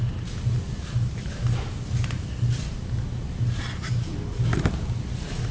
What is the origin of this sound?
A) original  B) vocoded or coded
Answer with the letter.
A